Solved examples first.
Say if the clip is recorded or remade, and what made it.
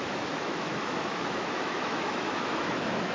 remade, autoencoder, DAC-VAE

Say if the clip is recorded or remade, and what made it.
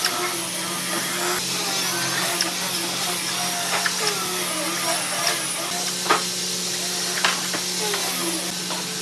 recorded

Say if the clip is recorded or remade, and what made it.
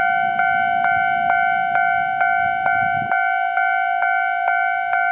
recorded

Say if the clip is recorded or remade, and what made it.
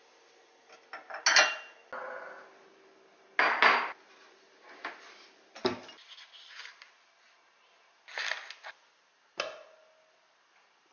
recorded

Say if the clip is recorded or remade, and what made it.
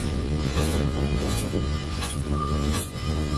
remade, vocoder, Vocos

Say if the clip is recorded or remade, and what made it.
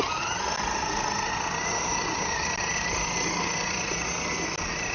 recorded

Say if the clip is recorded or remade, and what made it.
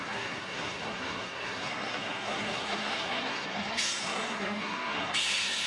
remade, codec, SNAC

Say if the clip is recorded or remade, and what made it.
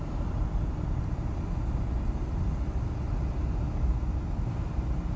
recorded